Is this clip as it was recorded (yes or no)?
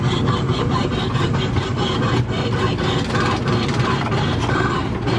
yes